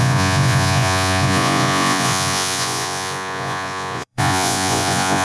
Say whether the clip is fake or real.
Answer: fake